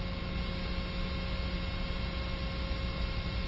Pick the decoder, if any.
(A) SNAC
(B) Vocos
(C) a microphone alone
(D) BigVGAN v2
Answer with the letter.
C